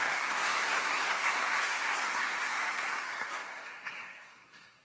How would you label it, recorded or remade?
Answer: remade